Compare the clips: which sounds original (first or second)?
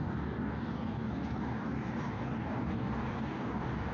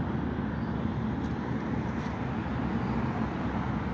second